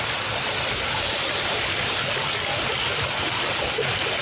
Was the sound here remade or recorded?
recorded